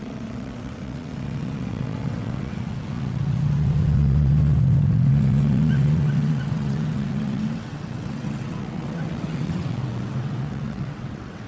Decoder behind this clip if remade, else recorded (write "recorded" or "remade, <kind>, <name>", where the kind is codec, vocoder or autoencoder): remade, vocoder, WaveNeXt